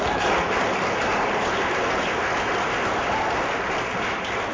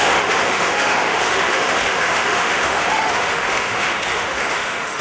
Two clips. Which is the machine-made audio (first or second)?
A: second